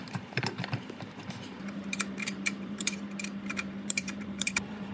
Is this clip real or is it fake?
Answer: fake